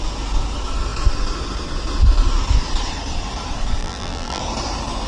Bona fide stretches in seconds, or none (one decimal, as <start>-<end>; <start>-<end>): 0.0-3.8; 4.4-5.1